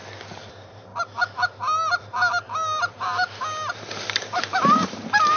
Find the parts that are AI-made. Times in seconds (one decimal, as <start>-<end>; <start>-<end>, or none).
0.5-0.9; 3.7-5.4